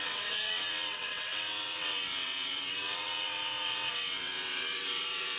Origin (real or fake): fake